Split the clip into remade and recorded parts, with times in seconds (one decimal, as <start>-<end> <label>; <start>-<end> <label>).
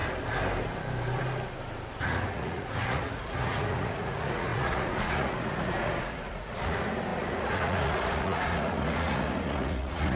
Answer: 0.0-2.0 recorded; 2.0-10.2 remade